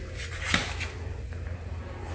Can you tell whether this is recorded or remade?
recorded